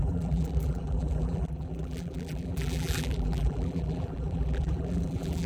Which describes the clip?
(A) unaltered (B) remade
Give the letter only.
B